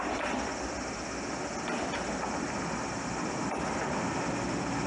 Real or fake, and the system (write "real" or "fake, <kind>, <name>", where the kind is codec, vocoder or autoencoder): real